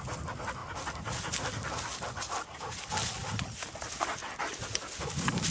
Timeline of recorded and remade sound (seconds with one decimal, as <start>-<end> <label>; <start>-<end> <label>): 0.0-5.5 recorded

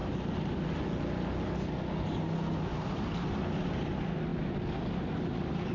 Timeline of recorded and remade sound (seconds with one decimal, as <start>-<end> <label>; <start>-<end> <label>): 0.0-5.7 recorded

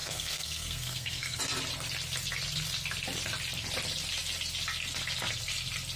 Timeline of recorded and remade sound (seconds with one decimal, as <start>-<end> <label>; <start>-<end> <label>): 0.0-1.4 remade; 1.4-6.0 recorded

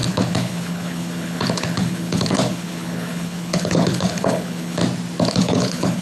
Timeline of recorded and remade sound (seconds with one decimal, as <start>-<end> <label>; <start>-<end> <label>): 0.0-4.8 remade; 4.8-5.3 recorded; 5.3-6.0 remade